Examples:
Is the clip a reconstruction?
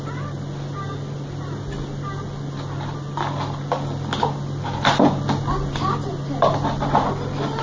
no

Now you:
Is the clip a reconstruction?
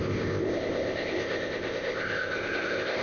yes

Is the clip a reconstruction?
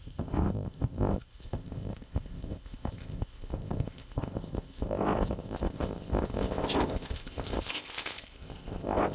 yes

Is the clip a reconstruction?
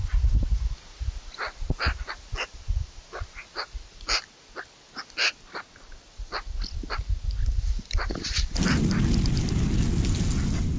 no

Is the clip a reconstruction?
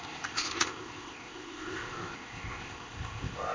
yes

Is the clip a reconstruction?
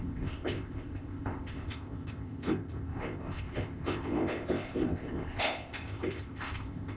yes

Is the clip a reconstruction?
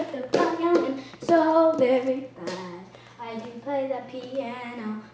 no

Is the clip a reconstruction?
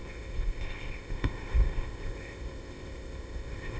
yes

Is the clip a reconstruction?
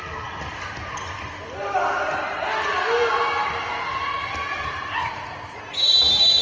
no